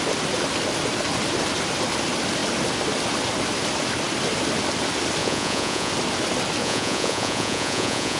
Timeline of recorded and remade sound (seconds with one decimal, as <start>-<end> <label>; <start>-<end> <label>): 0.0-5.2 recorded; 5.2-5.9 remade; 5.9-6.6 recorded; 6.6-8.2 remade